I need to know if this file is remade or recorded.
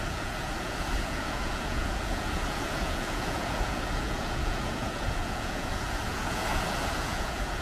remade